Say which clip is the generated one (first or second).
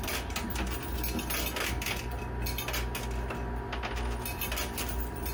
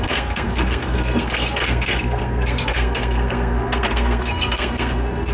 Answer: second